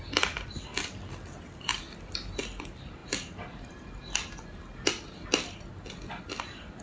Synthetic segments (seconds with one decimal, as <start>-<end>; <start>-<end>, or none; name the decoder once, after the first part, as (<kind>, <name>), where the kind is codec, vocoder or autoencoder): none